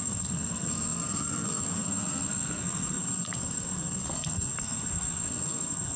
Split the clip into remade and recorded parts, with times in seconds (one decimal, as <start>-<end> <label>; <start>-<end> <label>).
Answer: 0.0-6.0 remade